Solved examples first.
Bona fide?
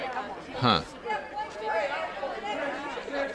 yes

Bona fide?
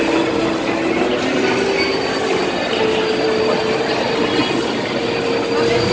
yes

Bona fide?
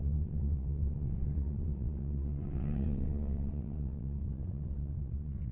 no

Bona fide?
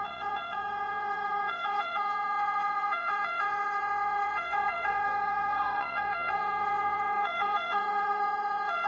no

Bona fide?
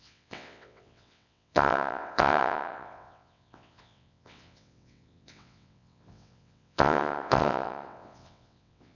no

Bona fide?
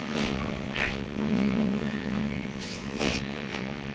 no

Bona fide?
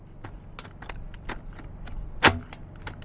yes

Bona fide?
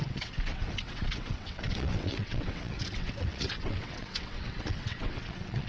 no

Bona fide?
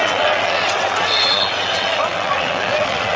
no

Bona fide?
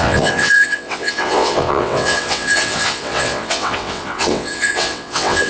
no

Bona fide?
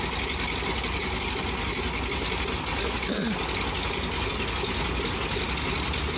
yes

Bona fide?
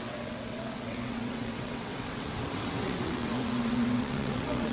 no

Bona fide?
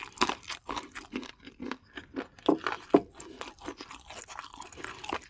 yes